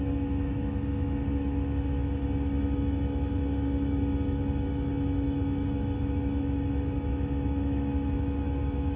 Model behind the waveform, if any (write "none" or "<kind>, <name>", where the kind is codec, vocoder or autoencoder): autoencoder, DAC-VAE